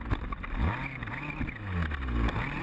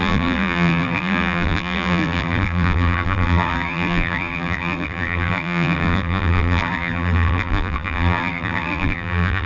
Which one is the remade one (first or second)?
second